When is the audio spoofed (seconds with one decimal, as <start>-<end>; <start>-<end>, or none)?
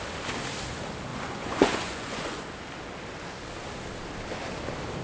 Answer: 1.1-2.4